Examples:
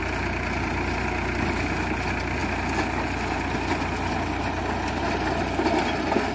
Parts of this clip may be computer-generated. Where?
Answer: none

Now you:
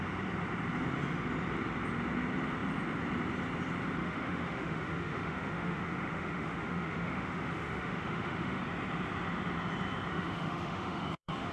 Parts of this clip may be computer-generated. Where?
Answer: 4.0-8.6 (autoencoder, DAC-VAE); 10.1-11.5

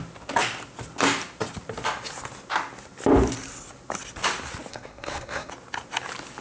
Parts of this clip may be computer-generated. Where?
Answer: 4.7-5.5 (codec, SNAC)

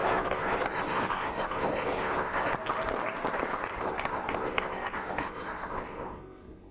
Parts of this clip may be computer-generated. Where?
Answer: 0.0-2.5 (codec, SNAC); 3.8-6.7